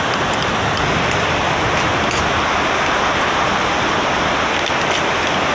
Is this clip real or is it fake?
real